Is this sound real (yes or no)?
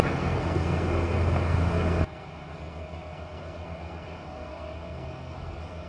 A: no